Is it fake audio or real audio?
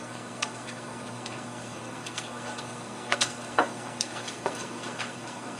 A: fake